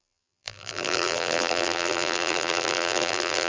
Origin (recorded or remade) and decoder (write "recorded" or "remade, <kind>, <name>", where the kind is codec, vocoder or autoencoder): remade, vocoder, BigVGAN v2